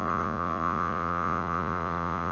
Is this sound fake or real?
fake